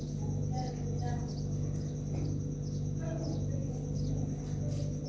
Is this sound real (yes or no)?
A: yes